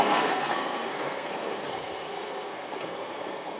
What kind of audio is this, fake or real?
fake